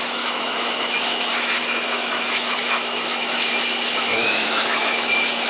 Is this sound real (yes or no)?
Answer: no